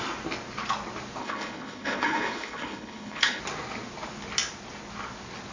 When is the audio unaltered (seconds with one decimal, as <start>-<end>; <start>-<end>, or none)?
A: 0.0-1.2; 3.4-5.5